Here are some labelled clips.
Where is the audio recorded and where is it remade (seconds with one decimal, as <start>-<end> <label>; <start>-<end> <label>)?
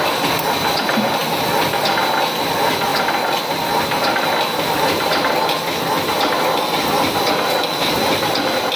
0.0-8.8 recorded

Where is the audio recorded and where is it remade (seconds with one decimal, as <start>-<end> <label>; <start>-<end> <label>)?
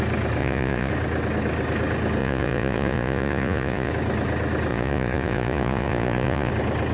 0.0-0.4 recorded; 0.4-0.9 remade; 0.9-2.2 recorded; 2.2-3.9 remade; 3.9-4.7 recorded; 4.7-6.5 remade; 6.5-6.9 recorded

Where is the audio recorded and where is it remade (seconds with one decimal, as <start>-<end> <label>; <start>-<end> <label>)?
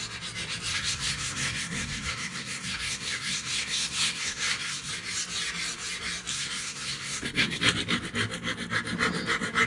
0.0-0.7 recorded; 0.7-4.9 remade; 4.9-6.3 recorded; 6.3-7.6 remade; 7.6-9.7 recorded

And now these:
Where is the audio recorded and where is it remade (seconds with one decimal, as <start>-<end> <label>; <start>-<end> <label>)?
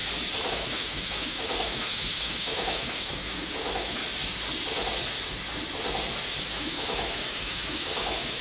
0.0-0.5 recorded; 0.5-4.0 remade; 4.0-6.4 recorded; 6.4-8.4 remade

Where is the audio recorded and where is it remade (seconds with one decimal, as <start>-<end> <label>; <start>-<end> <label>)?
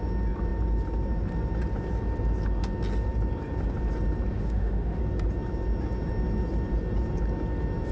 0.0-4.3 recorded; 4.3-5.0 remade; 5.0-7.9 recorded